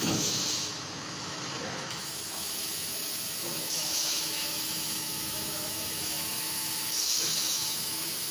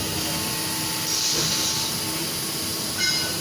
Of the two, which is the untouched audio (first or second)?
second